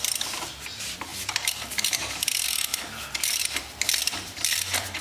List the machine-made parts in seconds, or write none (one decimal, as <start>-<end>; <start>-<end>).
0.0-2.7; 4.0-5.0